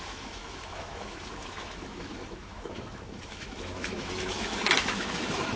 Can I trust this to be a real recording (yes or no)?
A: no